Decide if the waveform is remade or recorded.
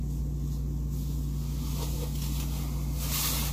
recorded